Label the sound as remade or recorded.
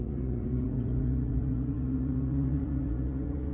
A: remade